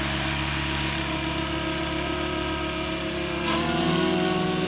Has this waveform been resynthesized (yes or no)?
yes